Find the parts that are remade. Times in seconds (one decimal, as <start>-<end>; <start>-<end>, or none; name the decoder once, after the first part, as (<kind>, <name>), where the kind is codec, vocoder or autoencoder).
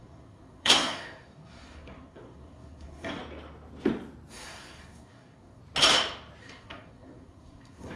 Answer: 0.0-3.2 (codec, SNAC); 4.3-5.6; 6.4-8.0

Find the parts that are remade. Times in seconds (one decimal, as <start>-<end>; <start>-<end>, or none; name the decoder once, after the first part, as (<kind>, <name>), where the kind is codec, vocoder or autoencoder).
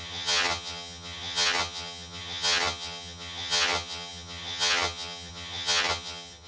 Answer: 0.0-6.5 (vocoder, HiFi-GAN)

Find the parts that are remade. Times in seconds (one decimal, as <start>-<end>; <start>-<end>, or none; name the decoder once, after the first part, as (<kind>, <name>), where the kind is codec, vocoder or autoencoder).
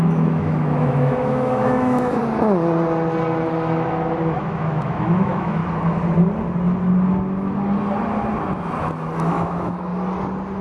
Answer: 0.0-2.2 (autoencoder, DAC-VAE); 4.4-5.6; 9.3-9.9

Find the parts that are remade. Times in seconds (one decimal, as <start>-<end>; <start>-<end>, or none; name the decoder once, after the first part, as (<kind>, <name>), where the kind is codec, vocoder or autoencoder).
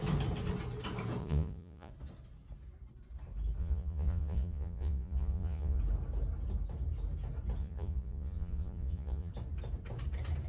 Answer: 1.2-1.9 (vocoder, Vocos); 3.6-5.8; 7.6-9.3